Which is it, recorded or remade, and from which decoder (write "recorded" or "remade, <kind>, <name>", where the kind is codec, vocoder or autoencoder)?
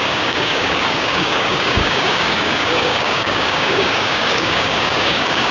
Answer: remade, codec, DAC